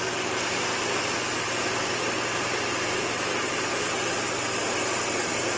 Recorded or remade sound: recorded